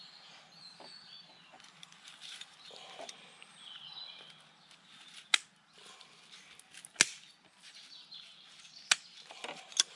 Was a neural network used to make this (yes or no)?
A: no